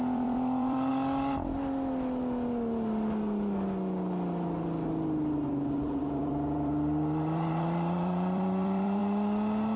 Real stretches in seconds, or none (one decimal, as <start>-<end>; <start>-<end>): 0.9-6.0; 9.0-9.8